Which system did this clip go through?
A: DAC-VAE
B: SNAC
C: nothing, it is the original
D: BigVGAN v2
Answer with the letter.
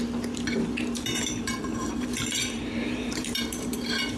D